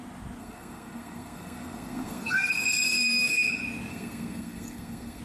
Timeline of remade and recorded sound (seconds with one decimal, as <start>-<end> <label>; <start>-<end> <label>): 0.0-0.4 recorded; 0.4-3.5 remade; 3.5-3.9 recorded; 3.9-5.2 remade